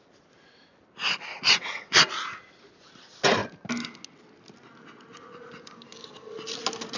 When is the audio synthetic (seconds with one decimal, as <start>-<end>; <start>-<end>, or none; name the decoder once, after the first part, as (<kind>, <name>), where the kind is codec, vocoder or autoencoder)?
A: 1.3-2.0 (vocoder, WaveNeXt)

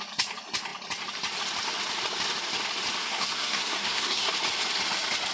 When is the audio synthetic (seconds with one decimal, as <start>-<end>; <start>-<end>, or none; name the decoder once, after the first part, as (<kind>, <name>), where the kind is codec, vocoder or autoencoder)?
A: 3.0-4.3 (codec, SNAC)